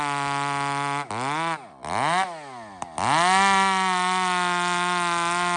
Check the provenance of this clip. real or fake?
real